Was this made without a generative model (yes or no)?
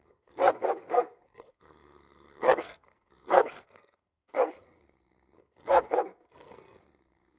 no